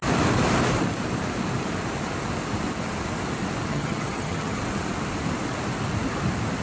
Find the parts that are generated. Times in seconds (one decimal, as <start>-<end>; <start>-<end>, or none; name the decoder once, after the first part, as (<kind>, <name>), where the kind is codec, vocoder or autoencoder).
3.7-4.6 (vocoder, HiFi-GAN)